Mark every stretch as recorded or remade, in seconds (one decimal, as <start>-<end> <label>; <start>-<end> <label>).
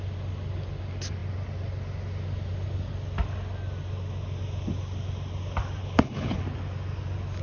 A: 0.0-5.8 recorded; 5.8-6.4 remade; 6.4-7.4 recorded